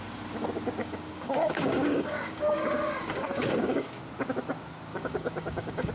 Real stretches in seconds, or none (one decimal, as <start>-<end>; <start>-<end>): 0.0-0.8; 4.0-4.9